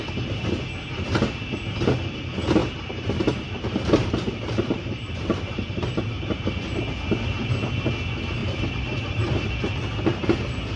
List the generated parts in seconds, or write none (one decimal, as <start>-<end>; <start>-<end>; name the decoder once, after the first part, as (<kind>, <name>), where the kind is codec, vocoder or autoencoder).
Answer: 2.6-6.8 (vocoder, BigVGAN v2); 8.4-9.5